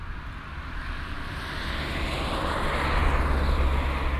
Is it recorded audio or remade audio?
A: recorded